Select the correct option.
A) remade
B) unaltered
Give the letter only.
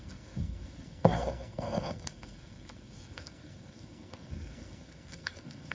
A